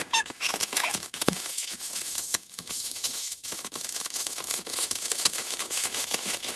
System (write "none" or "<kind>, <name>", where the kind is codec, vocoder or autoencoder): autoencoder, DAC-VAE